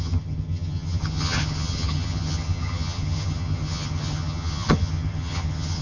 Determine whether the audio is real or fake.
fake